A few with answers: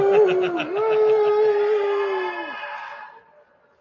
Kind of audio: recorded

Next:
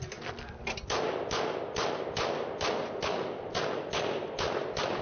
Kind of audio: recorded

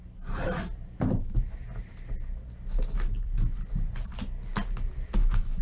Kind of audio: recorded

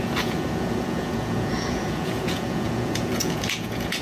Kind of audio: remade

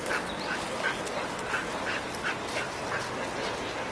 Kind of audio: recorded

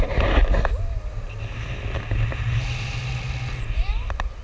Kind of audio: recorded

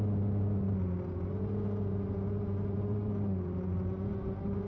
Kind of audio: recorded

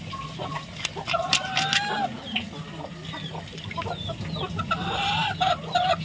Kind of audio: recorded